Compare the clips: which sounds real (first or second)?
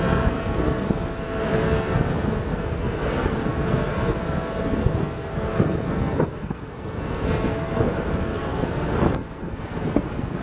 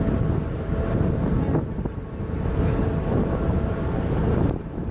second